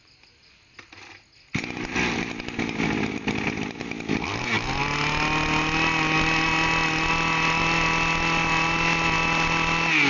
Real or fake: real